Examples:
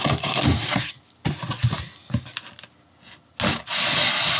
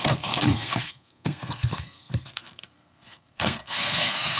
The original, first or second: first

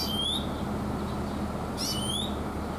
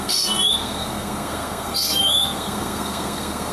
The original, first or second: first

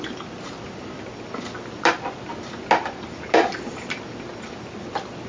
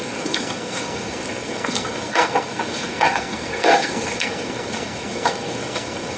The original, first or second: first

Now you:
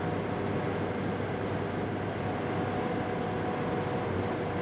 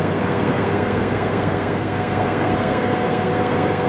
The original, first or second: first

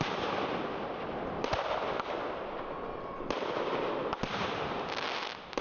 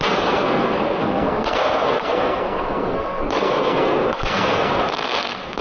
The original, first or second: first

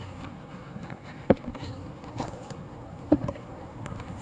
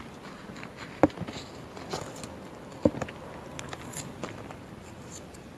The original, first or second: second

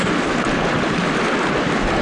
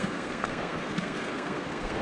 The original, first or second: first